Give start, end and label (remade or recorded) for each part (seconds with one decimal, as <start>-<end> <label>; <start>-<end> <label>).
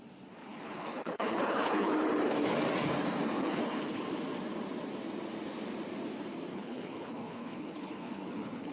0.0-0.4 recorded; 0.4-1.9 remade; 1.9-3.4 recorded; 3.4-4.0 remade; 4.0-6.5 recorded; 6.5-8.7 remade